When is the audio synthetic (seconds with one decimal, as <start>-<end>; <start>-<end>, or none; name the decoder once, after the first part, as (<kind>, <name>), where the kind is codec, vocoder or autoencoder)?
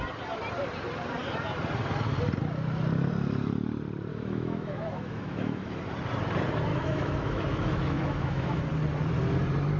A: 4.1-5.8 (autoencoder, DAC-VAE); 6.7-8.6